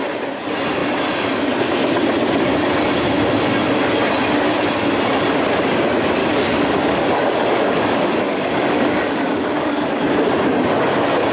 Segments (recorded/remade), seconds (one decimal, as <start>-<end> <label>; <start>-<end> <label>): 0.0-6.2 recorded; 6.2-10.0 remade; 10.0-11.3 recorded